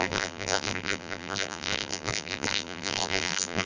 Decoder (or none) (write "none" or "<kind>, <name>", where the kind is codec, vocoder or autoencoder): vocoder, BigVGAN v2